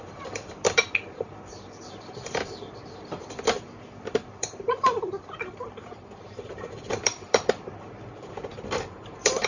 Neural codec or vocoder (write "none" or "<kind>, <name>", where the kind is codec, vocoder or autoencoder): vocoder, BigVGAN v2